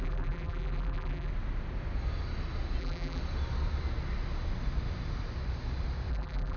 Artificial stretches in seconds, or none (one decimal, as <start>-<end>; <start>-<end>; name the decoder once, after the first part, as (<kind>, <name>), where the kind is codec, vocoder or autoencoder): 0.0-1.3 (vocoder, BigVGAN v2); 2.8-3.2; 6.1-6.6